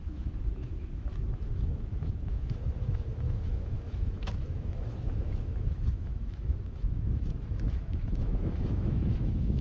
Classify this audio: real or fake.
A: fake